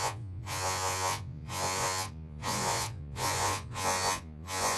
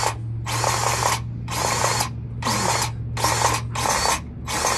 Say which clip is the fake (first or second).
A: first